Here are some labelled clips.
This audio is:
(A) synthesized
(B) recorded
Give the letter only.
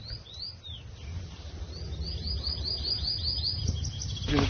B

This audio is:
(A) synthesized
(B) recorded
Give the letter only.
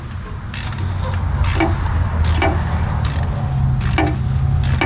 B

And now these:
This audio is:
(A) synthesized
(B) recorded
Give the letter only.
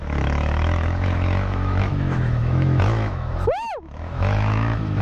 A